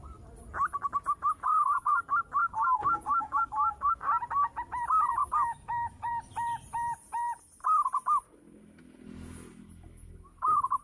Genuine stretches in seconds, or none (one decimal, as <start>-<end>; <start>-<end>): 0.0-1.5; 2.0-2.4; 3.9-5.2; 6.1-10.8